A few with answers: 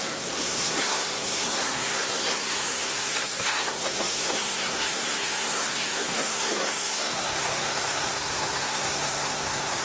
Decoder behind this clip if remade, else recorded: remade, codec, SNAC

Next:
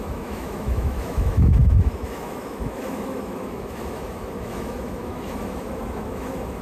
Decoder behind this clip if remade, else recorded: remade, autoencoder, DAC-VAE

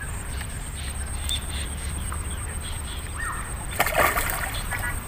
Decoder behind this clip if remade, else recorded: remade, vocoder, BigVGAN v2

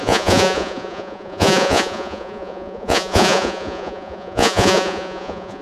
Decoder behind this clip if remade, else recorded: remade, vocoder, Vocos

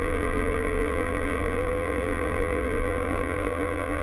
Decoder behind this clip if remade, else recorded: remade, vocoder, BigVGAN v2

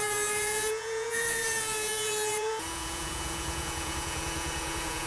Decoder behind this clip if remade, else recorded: remade, vocoder, Vocos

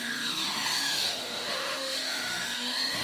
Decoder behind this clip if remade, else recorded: remade, autoencoder, DAC-VAE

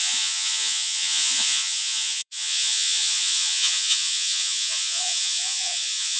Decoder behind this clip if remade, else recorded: remade, vocoder, Vocos